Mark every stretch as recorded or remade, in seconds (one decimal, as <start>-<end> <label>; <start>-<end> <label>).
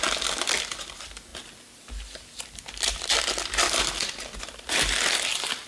0.0-5.7 remade